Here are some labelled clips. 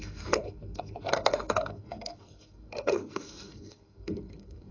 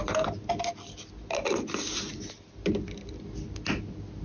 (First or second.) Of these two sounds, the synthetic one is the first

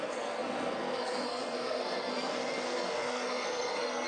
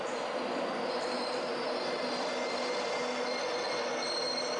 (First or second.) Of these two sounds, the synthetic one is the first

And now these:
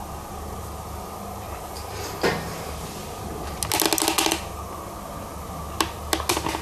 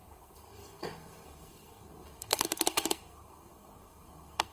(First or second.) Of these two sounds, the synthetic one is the second